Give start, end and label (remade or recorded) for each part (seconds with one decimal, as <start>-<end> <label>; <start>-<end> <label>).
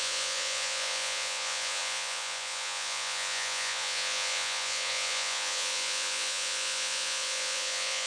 0.0-8.1 remade